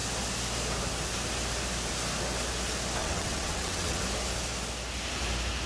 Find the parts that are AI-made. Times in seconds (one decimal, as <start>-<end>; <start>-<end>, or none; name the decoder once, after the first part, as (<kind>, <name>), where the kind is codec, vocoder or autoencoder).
3.0-4.0 (vocoder, WaveNeXt)